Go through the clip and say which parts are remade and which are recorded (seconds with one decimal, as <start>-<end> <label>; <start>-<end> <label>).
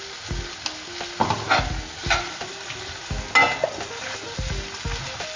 0.0-5.4 recorded